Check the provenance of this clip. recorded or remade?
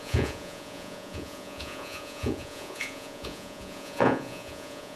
remade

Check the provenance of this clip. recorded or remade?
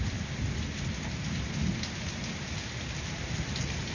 recorded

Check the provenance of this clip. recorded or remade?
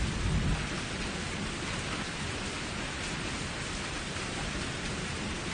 recorded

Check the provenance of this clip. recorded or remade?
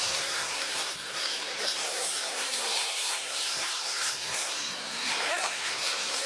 remade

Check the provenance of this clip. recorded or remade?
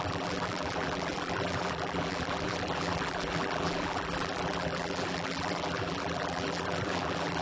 remade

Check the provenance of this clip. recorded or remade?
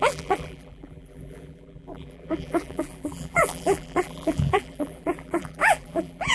remade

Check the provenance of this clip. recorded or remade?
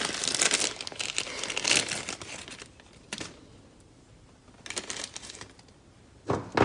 recorded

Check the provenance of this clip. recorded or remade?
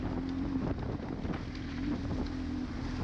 recorded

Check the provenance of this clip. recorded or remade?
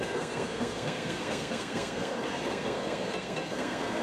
remade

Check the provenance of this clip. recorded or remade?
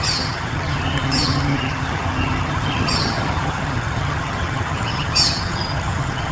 remade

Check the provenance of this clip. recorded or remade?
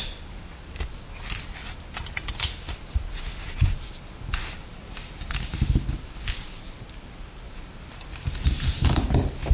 recorded